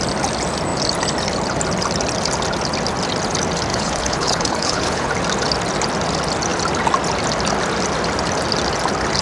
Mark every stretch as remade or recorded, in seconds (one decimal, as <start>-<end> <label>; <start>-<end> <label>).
0.0-3.7 recorded; 3.7-5.1 remade; 5.1-9.2 recorded